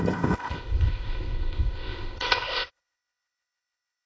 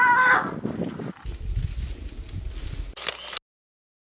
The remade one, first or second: first